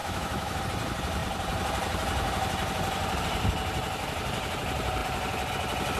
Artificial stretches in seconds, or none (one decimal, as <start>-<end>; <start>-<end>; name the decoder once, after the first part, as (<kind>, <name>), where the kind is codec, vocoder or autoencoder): 0.0-0.6 (autoencoder, DAC-VAE)